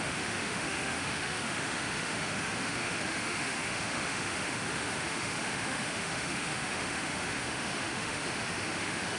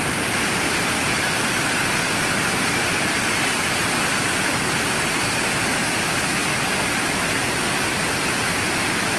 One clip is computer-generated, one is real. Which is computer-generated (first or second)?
first